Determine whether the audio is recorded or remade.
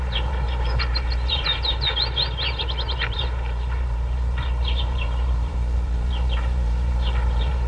remade